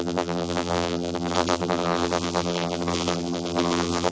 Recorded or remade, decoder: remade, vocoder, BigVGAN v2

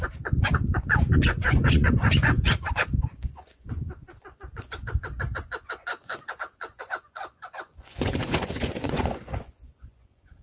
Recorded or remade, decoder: remade, vocoder, Vocos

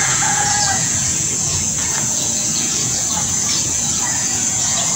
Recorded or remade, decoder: remade, vocoder, Vocos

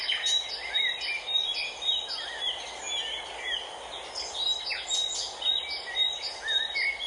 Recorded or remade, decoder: recorded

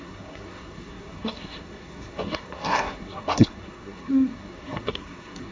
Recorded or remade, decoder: remade, codec, SNAC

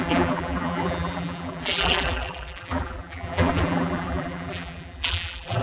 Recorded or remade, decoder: remade, vocoder, BigVGAN v2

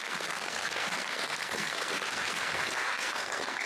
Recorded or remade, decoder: remade, codec, SNAC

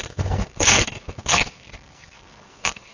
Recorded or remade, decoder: remade, codec, SNAC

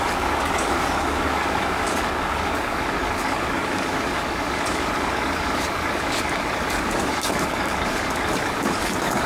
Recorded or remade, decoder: remade, codec, DAC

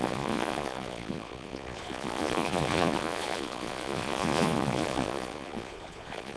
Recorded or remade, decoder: remade, vocoder, Vocos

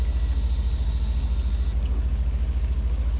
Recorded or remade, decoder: recorded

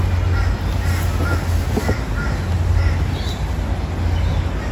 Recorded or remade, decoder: recorded